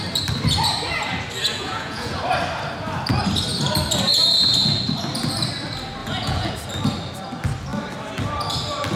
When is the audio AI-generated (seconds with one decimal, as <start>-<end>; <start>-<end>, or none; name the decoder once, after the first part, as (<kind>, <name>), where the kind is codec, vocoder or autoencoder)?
1.5-2.2 (vocoder, Vocos); 6.0-6.5